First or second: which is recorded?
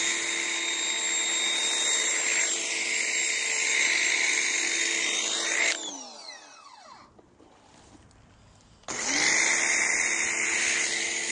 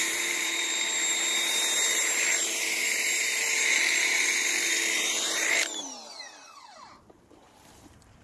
first